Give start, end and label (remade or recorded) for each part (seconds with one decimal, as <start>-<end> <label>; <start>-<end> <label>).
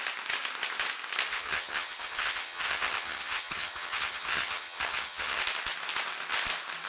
0.0-1.3 recorded; 1.3-5.4 remade; 5.4-6.9 recorded